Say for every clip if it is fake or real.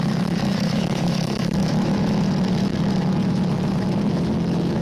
fake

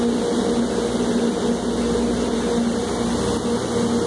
real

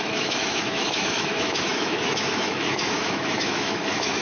fake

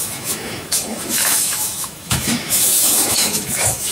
fake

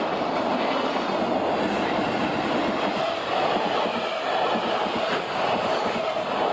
real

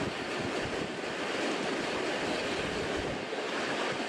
real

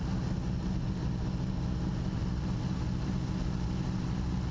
real